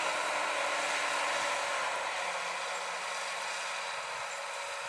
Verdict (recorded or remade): recorded